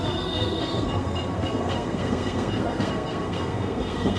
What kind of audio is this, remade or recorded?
remade